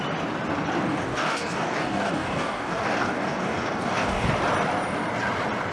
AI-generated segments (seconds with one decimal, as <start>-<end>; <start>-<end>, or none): 0.9-4.3